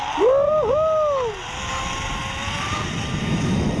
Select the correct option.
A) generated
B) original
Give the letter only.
B